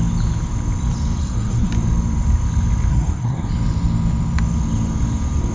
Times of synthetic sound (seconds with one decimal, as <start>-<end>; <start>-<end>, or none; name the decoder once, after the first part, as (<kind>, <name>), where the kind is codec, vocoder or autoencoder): 1.2-1.7 (codec, SNAC); 2.9-3.5